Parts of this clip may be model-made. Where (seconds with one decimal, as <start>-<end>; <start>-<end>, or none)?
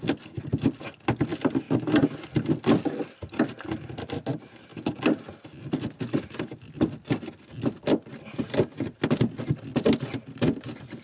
none